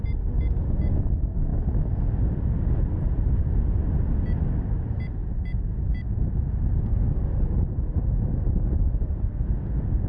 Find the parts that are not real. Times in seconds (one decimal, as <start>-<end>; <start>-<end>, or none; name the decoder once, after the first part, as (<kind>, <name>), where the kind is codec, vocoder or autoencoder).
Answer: none